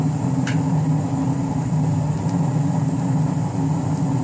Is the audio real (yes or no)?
yes